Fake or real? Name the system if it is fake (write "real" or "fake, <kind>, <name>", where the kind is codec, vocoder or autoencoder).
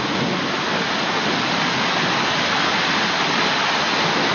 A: real